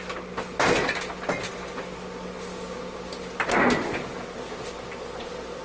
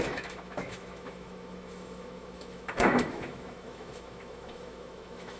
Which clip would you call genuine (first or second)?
first